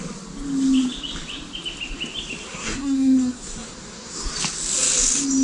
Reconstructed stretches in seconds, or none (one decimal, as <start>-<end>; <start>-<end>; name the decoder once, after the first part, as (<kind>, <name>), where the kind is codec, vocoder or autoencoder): 2.5-4.3 (codec, SNAC)